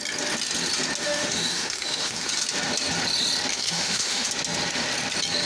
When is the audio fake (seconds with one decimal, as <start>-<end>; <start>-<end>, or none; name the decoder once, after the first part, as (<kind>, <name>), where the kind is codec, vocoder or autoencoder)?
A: 1.0-2.3 (autoencoder, DAC-VAE); 3.5-4.3